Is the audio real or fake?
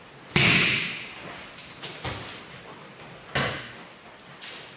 real